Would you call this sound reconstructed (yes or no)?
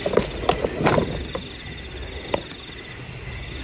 no